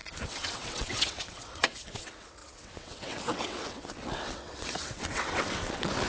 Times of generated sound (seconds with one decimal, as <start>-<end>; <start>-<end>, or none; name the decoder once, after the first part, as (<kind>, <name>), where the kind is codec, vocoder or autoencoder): 0.0-6.1 (vocoder, WaveNeXt)